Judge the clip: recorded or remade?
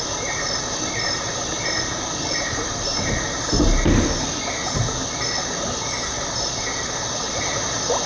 recorded